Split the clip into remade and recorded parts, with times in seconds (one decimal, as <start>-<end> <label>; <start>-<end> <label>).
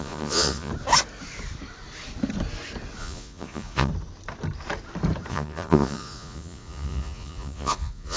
0.0-0.7 remade; 0.7-3.0 recorded; 3.0-3.9 remade; 3.9-5.3 recorded; 5.3-8.2 remade